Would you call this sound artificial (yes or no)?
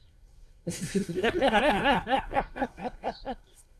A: yes